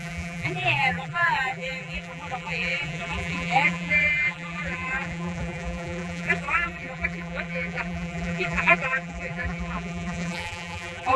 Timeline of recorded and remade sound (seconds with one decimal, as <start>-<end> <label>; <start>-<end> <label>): 0.0-11.2 remade